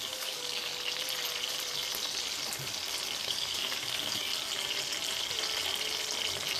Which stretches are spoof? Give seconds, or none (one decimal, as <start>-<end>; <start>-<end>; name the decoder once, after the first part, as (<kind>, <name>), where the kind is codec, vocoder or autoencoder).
0.0-0.7 (codec, DAC); 3.2-4.3